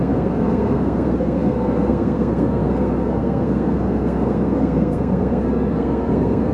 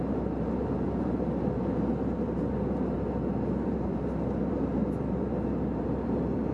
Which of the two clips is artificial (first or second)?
first